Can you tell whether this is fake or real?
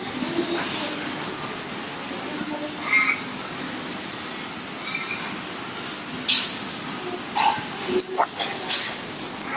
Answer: real